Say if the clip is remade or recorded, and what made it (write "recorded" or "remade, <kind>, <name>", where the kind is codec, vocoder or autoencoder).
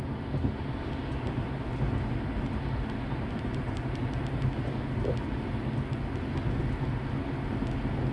recorded